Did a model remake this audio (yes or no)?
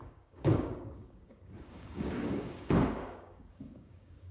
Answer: yes